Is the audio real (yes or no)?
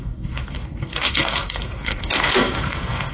no